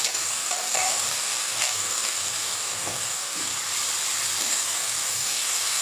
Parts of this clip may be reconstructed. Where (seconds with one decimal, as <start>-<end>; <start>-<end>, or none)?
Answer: 0.0-3.5; 4.4-5.8